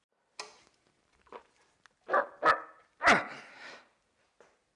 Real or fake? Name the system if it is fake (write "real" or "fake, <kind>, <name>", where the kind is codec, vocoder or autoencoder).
real